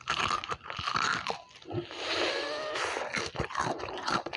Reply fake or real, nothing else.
real